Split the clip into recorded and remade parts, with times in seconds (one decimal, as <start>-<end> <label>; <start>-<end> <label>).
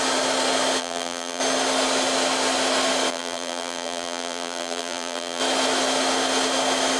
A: 0.0-0.8 recorded; 0.8-1.4 remade; 1.4-3.1 recorded; 3.1-5.4 remade; 5.4-7.0 recorded